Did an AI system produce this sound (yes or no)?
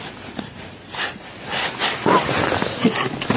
no